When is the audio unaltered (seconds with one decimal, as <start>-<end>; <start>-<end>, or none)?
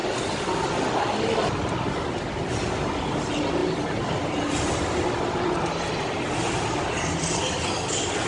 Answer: 0.0-8.3